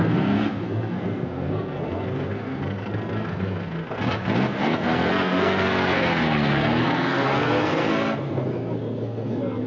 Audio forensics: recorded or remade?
remade